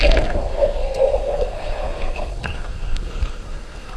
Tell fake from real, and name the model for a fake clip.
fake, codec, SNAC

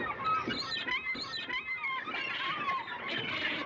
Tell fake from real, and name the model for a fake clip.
real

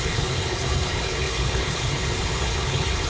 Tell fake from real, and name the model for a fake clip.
fake, codec, HILCodec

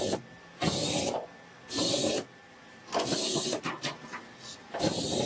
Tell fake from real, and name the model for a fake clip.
real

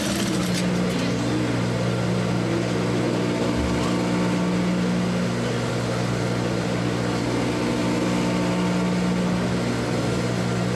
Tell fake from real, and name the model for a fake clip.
real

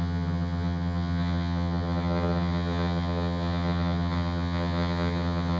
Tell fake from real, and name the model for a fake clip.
fake, vocoder, HiFi-GAN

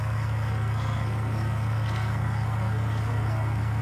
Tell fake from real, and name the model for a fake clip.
fake, codec, SNAC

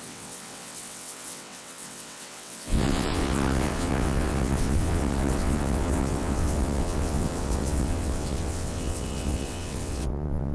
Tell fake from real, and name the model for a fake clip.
fake, vocoder, WaveNeXt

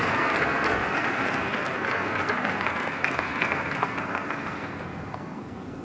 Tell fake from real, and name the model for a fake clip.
fake, codec, SNAC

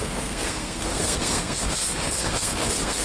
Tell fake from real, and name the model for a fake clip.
fake, codec, SNAC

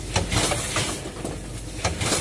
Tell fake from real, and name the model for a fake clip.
real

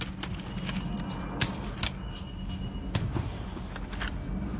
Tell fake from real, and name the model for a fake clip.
real